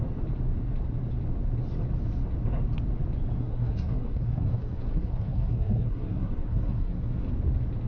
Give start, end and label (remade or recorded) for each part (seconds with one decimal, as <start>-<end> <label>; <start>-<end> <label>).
0.0-3.4 recorded; 3.4-7.3 remade; 7.3-7.9 recorded